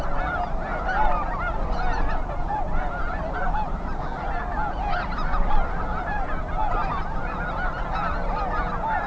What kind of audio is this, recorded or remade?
recorded